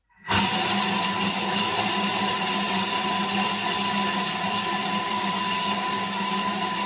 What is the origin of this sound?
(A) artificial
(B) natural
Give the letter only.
B